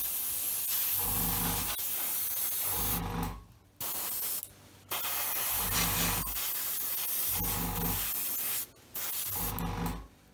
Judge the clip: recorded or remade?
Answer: recorded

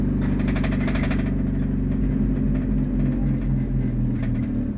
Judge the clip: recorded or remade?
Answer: recorded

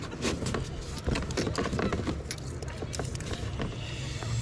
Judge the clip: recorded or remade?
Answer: recorded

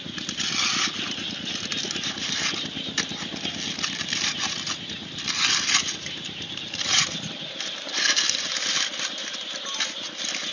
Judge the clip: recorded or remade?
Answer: recorded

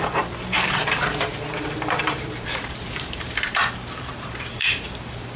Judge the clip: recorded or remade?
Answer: remade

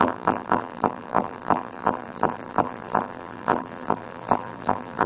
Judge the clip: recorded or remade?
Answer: remade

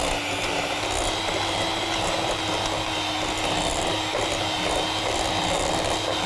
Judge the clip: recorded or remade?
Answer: recorded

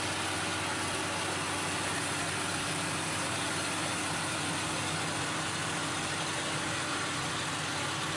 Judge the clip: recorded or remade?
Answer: recorded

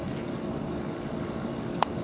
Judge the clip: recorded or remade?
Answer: remade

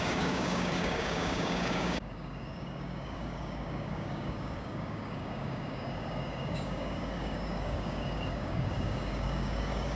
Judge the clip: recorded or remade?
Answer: remade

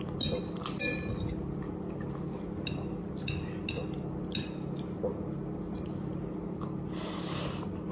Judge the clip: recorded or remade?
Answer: recorded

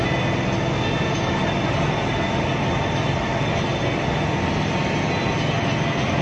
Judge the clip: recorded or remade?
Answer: recorded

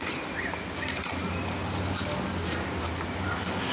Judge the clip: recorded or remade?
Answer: recorded